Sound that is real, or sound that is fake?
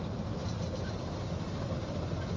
real